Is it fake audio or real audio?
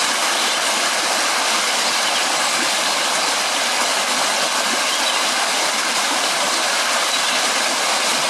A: real